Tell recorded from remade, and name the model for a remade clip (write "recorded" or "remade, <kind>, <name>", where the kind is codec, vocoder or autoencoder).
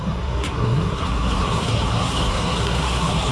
remade, codec, SNAC